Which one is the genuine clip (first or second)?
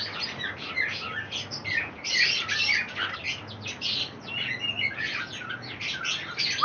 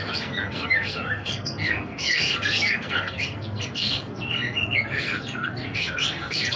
first